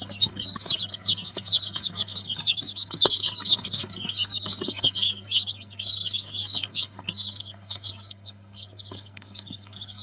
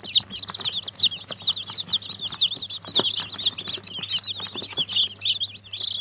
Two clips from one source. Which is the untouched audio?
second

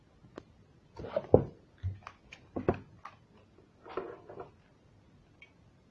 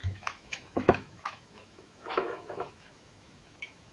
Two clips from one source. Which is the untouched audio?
first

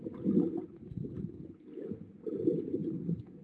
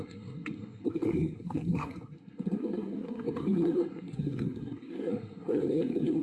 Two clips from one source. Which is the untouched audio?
first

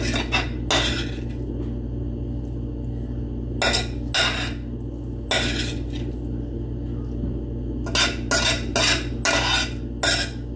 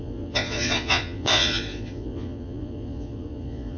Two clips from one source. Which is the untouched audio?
first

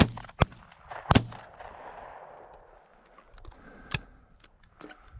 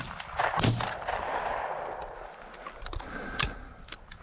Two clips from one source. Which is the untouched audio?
first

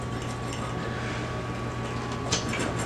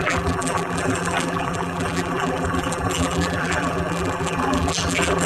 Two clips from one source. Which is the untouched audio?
first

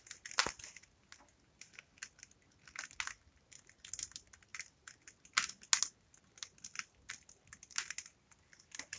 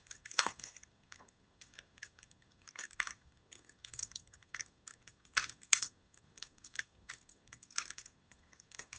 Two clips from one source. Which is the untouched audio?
first